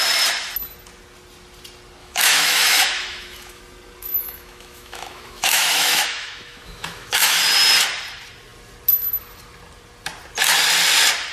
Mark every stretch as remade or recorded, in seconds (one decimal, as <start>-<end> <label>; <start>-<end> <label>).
0.0-2.0 recorded; 2.0-3.6 remade; 3.6-4.2 recorded; 4.2-7.4 remade; 7.4-11.3 recorded